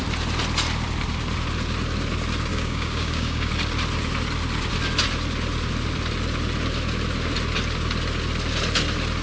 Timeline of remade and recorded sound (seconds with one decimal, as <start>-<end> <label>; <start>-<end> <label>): 0.0-2.5 recorded; 2.5-3.5 remade; 3.5-9.2 recorded